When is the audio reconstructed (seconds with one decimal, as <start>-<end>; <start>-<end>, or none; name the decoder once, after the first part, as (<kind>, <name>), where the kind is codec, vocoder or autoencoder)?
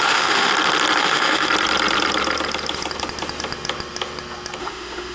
0.0-0.5 (autoencoder, DAC-VAE); 1.0-1.5; 4.6-5.1